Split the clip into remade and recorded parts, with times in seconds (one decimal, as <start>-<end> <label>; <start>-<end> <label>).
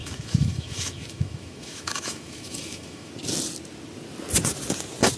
0.0-3.1 remade; 3.1-5.2 recorded